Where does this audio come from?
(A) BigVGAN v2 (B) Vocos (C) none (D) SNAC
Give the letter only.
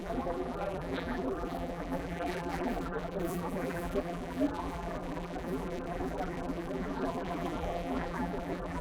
A